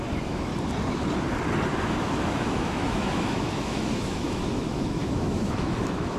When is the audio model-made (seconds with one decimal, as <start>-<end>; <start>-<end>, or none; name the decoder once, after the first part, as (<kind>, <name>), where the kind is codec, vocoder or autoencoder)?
0.0-0.5 (autoencoder, DAC-VAE); 1.8-6.2

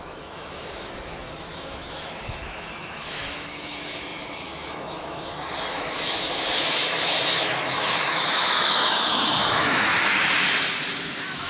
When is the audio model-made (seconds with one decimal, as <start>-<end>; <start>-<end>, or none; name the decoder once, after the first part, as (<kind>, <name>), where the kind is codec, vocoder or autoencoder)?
0.0-9.9 (autoencoder, DAC-VAE); 11.0-11.5